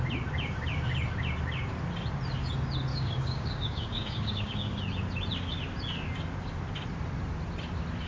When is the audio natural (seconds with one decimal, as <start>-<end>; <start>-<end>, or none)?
0.0-2.9; 4.8-8.1